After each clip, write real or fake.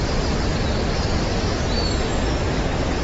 real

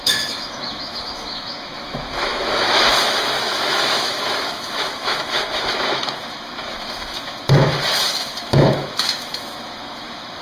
fake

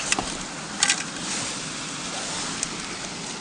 real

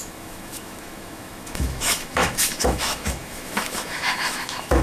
fake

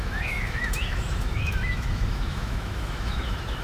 fake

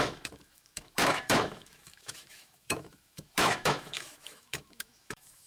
fake